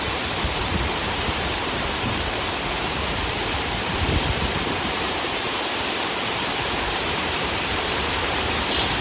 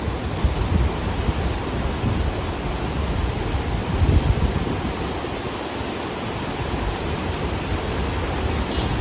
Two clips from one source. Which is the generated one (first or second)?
first